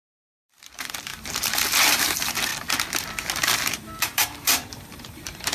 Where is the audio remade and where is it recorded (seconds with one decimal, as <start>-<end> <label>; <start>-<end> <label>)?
0.0-2.5 remade; 2.5-4.0 recorded; 4.0-5.5 remade